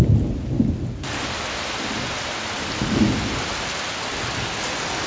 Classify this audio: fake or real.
real